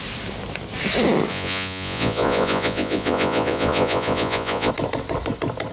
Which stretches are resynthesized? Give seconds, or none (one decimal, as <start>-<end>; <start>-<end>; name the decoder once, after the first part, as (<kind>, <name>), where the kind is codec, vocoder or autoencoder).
1.3-4.7 (vocoder, Vocos)